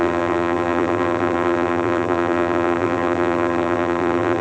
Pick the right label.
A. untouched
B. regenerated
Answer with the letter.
B